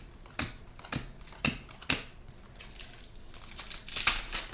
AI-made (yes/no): no